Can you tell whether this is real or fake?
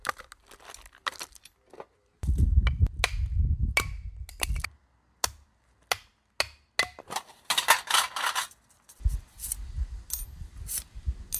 real